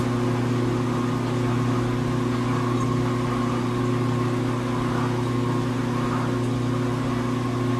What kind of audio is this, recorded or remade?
recorded